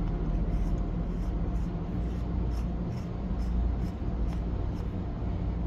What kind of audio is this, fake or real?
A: real